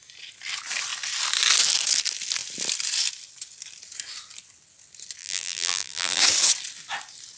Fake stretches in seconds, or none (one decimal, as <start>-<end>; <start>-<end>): 5.2-6.2